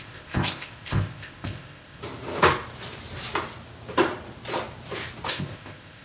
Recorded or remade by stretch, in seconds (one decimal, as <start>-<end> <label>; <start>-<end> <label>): 0.0-2.0 remade; 2.0-5.3 recorded; 5.3-6.0 remade